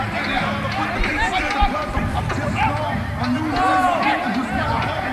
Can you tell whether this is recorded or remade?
recorded